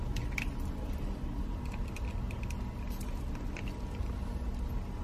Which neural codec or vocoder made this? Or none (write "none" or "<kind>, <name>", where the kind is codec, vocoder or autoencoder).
none